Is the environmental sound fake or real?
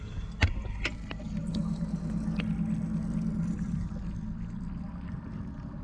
real